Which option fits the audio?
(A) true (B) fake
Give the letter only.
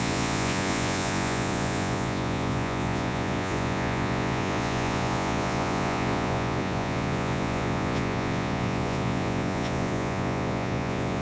B